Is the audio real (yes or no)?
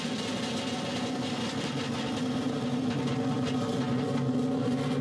yes